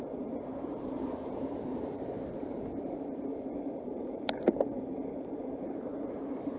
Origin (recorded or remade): remade